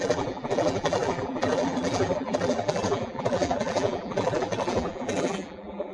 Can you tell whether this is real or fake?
fake